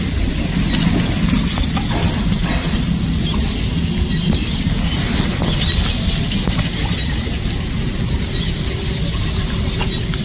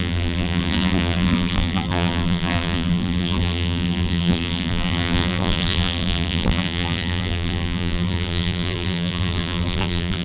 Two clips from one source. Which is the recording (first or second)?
first